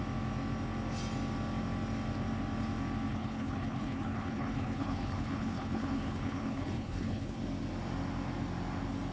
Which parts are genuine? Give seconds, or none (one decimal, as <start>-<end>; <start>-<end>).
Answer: 0.0-3.1; 7.4-9.1